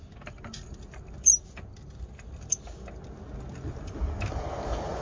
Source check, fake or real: real